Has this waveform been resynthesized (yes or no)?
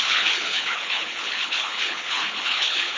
yes